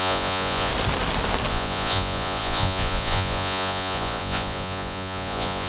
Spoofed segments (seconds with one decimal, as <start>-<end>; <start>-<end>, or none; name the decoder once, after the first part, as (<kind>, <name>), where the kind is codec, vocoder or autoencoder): 0.0-0.7 (vocoder, Vocos); 1.5-5.7